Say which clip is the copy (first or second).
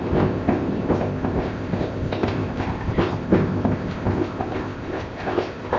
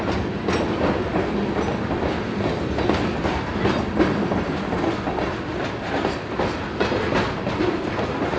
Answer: first